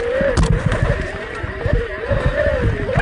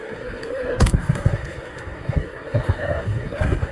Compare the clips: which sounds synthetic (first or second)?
second